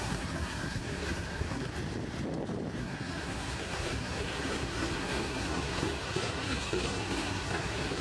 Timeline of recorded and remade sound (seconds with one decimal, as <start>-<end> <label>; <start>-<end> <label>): 0.0-1.7 remade; 1.7-2.8 recorded; 2.8-8.0 remade